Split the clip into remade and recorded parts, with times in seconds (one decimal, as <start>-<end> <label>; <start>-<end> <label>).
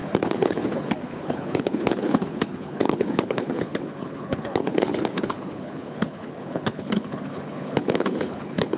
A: 0.0-8.8 remade